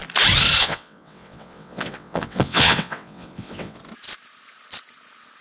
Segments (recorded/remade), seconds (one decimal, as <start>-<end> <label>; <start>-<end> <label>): 0.0-0.6 recorded; 0.6-3.8 remade; 3.8-5.4 recorded